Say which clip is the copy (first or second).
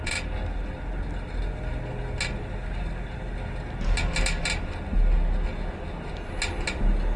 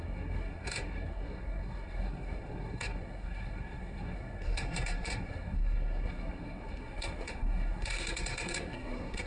second